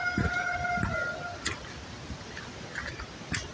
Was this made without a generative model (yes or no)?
yes